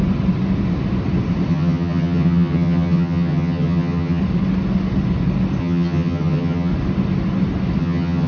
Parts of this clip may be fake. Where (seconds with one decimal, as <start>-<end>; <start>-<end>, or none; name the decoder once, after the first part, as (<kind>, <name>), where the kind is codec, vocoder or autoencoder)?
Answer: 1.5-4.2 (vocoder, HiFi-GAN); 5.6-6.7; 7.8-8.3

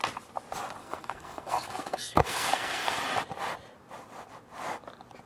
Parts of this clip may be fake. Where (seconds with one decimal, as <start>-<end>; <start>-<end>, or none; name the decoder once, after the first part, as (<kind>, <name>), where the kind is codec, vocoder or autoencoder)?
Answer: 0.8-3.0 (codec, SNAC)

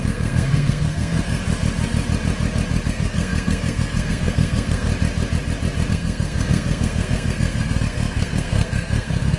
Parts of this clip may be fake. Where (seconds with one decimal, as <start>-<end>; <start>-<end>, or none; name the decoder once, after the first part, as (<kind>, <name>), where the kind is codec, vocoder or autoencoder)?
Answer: 0.0-1.4 (codec, SNAC); 2.9-4.9; 5.9-9.4

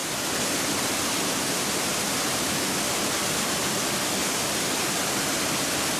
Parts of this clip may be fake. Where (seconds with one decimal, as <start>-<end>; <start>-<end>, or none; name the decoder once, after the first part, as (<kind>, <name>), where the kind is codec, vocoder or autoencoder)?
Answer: 4.2-4.9 (vocoder, BigVGAN v2)